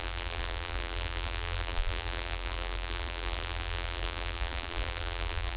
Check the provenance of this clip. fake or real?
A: fake